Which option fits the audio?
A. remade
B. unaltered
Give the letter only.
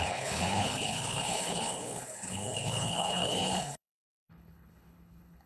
A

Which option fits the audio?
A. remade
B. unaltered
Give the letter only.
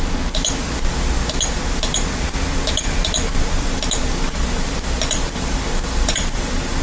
B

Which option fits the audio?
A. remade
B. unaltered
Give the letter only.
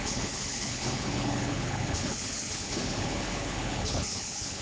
A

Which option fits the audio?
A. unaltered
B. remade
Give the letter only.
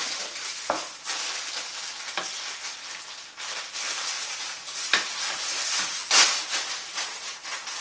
A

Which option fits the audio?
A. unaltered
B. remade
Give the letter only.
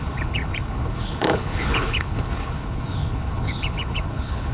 B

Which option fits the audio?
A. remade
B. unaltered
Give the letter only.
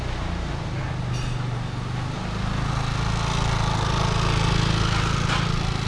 B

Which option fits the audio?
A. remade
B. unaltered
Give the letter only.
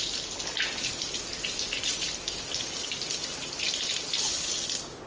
B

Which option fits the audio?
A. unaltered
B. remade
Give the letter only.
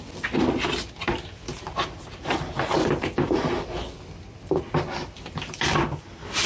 A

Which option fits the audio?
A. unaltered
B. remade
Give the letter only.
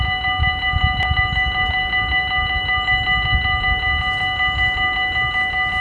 A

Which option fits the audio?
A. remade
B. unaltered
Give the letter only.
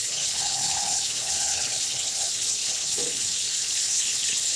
A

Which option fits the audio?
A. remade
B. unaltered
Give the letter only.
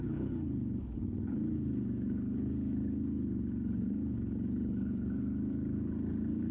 A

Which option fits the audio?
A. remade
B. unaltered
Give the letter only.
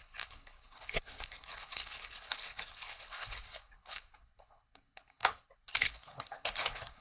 A